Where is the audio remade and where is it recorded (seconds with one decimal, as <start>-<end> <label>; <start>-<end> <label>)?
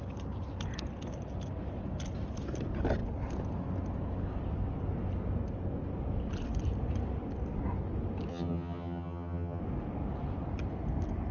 0.0-8.3 recorded; 8.3-9.6 remade; 9.6-11.3 recorded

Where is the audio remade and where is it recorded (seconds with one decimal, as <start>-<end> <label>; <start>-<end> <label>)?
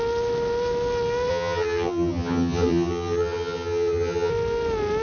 0.0-1.3 recorded; 1.3-4.3 remade; 4.3-5.0 recorded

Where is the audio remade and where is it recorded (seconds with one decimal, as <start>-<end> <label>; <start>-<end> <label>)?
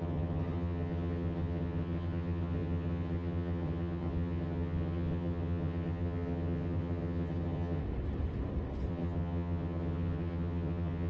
0.0-7.8 remade; 7.8-8.9 recorded; 8.9-11.1 remade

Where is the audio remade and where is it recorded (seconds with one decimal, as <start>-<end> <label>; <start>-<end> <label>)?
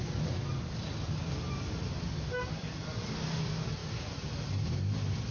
0.0-5.3 recorded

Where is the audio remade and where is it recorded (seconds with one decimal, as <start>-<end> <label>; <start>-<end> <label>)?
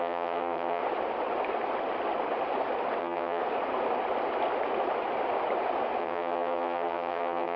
0.0-0.8 remade; 0.8-3.0 recorded; 3.0-3.4 remade; 3.4-6.0 recorded; 6.0-7.6 remade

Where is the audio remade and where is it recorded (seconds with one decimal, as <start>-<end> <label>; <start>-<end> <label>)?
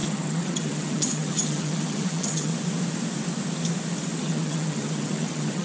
0.0-2.5 remade; 2.5-4.2 recorded; 4.2-5.6 remade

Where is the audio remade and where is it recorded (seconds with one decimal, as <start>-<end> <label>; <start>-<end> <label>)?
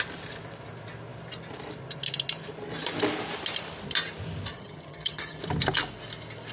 0.0-4.5 recorded; 4.5-5.4 remade; 5.4-6.5 recorded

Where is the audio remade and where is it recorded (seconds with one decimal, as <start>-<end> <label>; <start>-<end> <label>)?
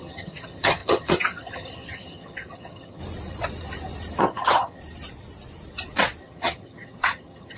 0.0-3.0 remade; 3.0-4.2 recorded; 4.2-4.8 remade; 4.8-6.2 recorded; 6.2-7.6 remade